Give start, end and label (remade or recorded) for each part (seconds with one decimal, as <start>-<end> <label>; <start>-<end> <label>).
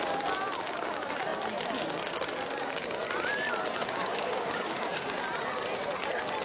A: 0.0-3.8 recorded; 3.8-5.2 remade; 5.2-6.4 recorded